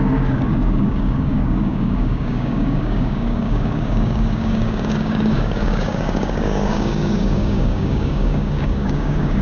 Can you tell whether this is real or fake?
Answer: fake